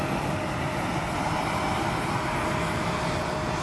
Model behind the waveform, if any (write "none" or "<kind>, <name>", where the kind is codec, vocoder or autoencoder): none